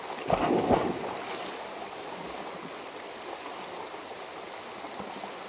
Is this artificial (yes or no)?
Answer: no